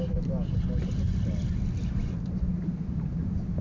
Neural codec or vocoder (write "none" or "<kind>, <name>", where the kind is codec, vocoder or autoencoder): none